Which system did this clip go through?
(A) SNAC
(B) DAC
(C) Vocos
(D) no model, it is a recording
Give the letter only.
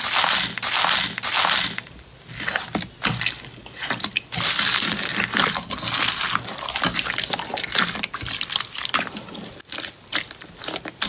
D